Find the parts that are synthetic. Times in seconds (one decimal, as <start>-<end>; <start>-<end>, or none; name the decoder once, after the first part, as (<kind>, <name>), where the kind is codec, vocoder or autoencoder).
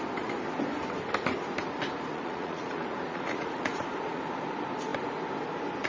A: 2.1-4.2 (vocoder, Vocos)